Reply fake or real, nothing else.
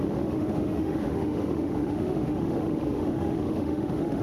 fake